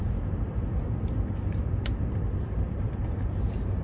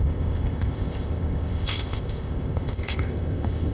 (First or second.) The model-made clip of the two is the second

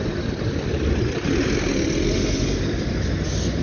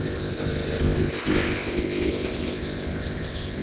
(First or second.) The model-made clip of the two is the second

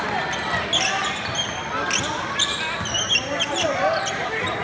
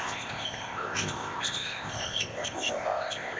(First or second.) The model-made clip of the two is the second